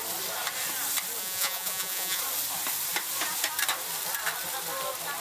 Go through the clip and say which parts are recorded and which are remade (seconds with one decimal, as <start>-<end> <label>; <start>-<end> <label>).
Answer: 0.0-1.2 recorded; 1.2-2.2 remade; 2.2-5.2 recorded

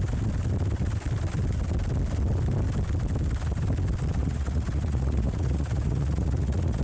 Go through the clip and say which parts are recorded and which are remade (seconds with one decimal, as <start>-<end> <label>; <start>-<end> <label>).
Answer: 0.0-4.2 recorded; 4.2-6.8 remade

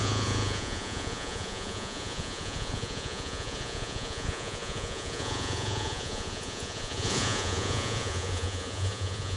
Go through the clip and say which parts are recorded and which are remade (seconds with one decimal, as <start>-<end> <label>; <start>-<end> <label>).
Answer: 0.0-9.4 remade

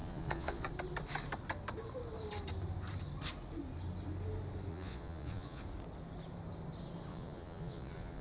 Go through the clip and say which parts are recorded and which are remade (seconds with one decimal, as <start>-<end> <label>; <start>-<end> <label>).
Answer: 0.0-0.7 remade; 0.7-4.7 recorded; 4.7-5.6 remade; 5.6-7.1 recorded; 7.1-8.2 remade

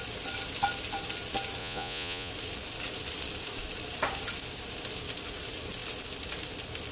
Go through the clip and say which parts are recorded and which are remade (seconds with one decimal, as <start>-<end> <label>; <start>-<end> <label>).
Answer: 0.0-1.6 recorded; 1.6-2.3 remade; 2.3-6.9 recorded

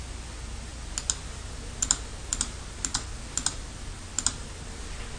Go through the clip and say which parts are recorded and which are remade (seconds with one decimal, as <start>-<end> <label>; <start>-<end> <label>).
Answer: 0.0-5.2 recorded